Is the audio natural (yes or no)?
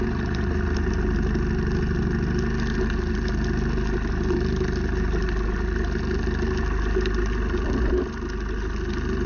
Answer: yes